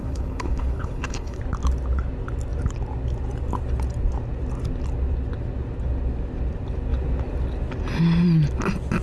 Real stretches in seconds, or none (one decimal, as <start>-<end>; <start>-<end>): 1.4-9.0